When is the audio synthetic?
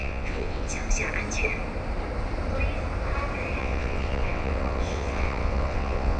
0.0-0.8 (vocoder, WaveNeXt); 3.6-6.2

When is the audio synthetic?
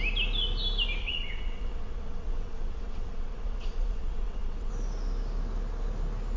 1.0-4.7 (vocoder, WaveNeXt)